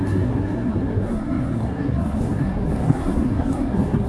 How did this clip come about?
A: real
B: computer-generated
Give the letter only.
B